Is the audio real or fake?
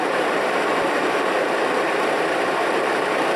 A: fake